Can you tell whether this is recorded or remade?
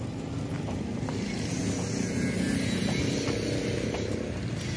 recorded